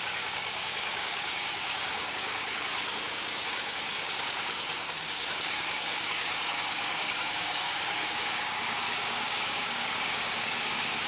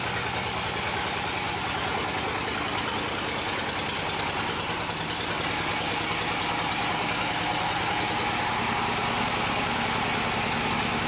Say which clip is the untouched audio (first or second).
second